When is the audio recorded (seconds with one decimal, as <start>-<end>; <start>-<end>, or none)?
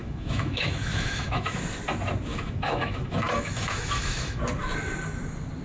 1.6-2.3; 4.4-5.6